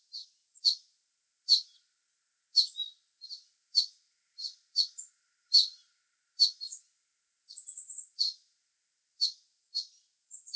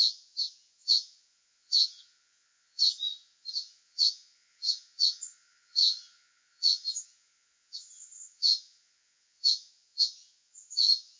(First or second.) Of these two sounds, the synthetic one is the second